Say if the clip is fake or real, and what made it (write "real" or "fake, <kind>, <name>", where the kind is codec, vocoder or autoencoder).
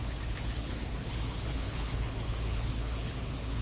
fake, codec, HILCodec